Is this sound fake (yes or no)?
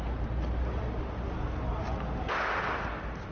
no